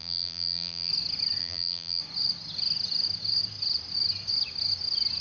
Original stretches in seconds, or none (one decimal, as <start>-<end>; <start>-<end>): 0.9-1.4; 2.0-5.2